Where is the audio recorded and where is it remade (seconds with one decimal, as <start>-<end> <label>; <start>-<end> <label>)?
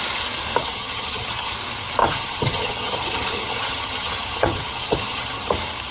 0.0-0.6 recorded; 0.6-1.5 remade; 1.5-2.0 recorded; 2.0-5.5 remade; 5.5-5.9 recorded